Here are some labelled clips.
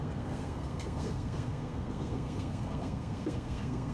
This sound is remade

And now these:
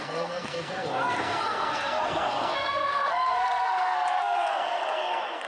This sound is remade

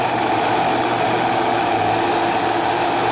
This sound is recorded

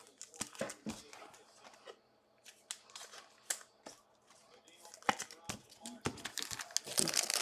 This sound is recorded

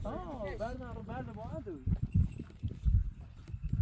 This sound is recorded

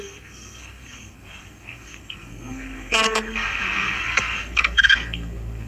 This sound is remade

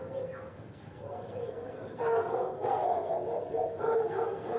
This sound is remade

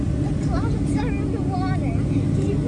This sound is recorded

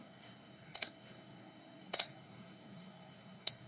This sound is remade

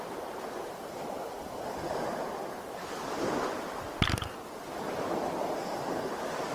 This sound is recorded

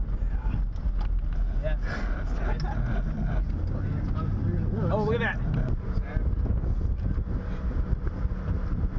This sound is recorded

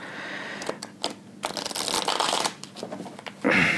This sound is recorded